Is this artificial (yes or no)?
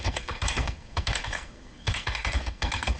yes